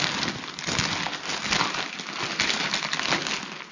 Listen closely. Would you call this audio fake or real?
real